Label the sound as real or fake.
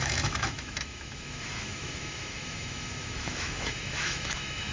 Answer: fake